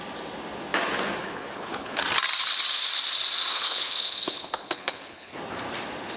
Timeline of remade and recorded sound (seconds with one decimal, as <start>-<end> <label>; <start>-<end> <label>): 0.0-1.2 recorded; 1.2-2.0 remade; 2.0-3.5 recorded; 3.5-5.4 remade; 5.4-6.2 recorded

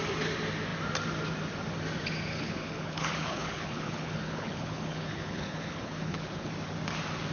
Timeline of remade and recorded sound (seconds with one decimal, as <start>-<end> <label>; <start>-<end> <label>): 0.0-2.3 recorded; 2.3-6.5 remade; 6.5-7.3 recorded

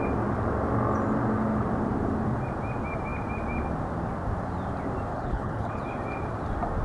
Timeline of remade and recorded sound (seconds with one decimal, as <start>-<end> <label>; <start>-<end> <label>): 0.0-5.1 recorded; 5.1-5.8 remade; 5.8-6.8 recorded

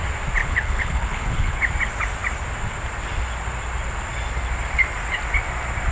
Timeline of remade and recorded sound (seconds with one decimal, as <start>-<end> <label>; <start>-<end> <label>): 0.0-0.4 recorded; 0.4-1.6 remade; 1.6-5.9 recorded